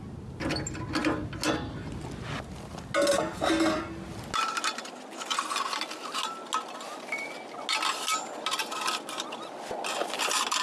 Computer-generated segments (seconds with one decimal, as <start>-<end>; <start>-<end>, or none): none